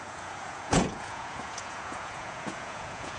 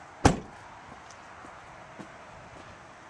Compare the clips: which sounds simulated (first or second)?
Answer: first